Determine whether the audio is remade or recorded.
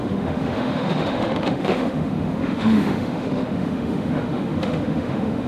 remade